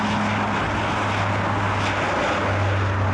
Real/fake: real